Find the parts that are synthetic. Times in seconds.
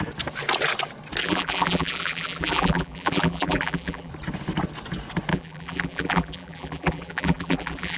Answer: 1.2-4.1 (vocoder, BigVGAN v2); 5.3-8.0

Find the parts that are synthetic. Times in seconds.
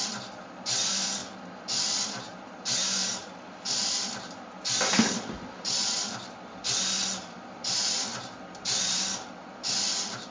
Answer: 0.0-1.2 (vocoder, BigVGAN v2); 1.8-10.3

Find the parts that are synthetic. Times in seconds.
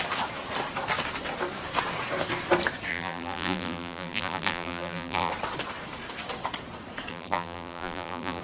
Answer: 2.9-5.3 (vocoder, BigVGAN v2); 7.1-8.4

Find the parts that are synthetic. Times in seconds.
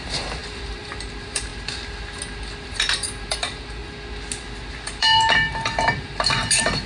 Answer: 0.0-1.5 (vocoder, BigVGAN v2); 2.6-3.8; 5.0-6.9